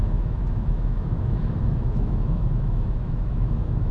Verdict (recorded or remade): remade